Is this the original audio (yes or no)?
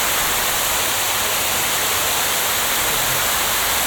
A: yes